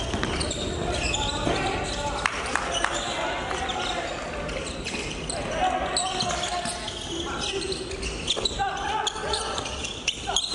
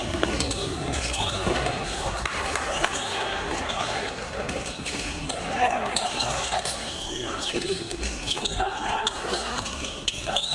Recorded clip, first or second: first